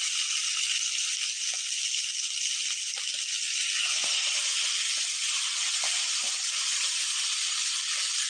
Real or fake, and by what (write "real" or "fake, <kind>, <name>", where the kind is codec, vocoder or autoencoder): real